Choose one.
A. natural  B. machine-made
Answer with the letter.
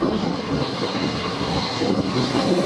B